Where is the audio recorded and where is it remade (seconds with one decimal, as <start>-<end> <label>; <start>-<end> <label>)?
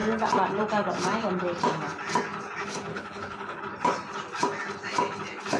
0.0-2.9 recorded; 2.9-3.6 remade; 3.6-5.6 recorded